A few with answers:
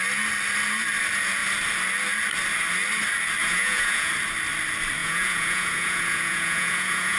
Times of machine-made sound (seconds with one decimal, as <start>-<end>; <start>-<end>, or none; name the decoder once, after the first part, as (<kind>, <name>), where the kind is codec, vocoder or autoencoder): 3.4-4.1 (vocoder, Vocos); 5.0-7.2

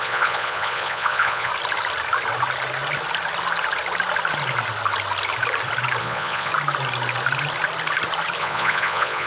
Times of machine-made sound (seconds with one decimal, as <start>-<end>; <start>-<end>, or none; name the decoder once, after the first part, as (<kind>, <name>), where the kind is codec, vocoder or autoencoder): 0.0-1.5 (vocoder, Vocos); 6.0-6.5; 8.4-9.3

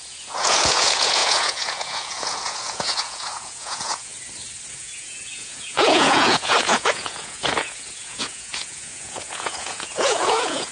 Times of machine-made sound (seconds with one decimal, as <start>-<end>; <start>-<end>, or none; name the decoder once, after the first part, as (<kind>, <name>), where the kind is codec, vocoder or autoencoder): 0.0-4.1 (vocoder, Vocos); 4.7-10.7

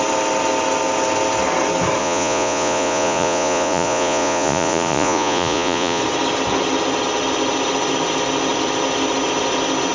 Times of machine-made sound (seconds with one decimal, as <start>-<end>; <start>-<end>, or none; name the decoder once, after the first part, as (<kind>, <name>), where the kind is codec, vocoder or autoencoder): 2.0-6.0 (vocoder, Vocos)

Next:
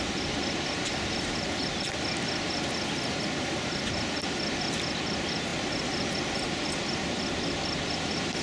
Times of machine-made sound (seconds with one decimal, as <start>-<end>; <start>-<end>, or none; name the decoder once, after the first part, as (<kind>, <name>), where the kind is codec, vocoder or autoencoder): none

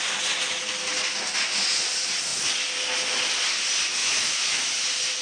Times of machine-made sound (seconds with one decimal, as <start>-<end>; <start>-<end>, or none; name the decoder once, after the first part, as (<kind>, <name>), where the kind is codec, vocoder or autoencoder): 4.0-4.5 (autoencoder, DAC-VAE)